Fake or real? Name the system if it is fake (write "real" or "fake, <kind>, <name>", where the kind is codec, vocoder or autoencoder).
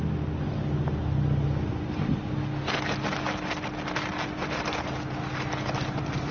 real